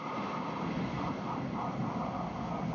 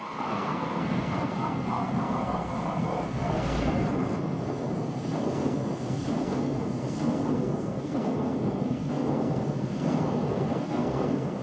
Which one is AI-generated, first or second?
second